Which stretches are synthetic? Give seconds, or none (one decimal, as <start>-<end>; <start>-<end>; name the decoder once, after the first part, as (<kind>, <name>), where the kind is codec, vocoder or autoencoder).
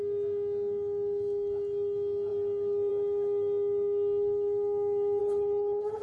5.2-6.0 (codec, HILCodec)